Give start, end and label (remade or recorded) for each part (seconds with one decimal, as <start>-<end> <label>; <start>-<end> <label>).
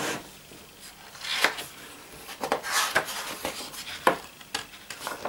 0.0-5.3 recorded